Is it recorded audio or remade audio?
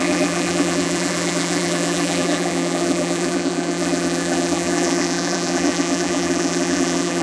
remade